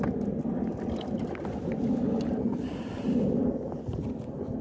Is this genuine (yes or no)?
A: yes